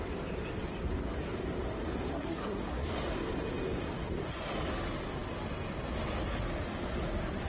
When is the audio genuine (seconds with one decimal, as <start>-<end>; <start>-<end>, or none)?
0.0-2.1; 2.9-7.5